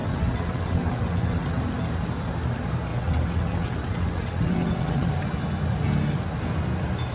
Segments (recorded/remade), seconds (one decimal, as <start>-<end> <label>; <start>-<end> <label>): 0.0-1.6 remade; 1.6-2.9 recorded; 2.9-5.1 remade; 5.1-7.1 recorded